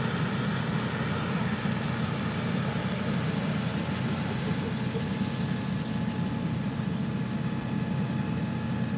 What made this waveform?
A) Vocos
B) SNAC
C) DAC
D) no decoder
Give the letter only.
D